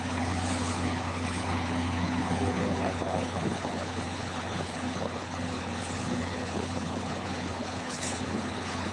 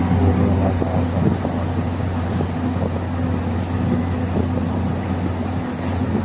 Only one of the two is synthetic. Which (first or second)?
first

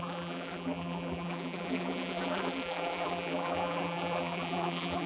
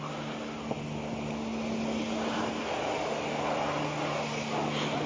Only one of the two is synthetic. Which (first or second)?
first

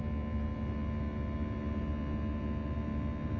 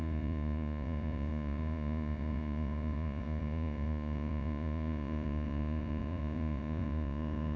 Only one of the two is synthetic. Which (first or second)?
second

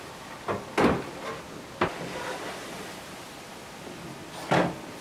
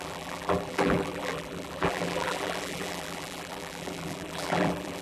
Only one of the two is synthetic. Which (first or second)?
second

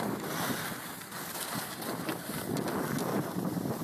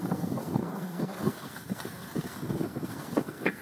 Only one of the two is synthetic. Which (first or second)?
second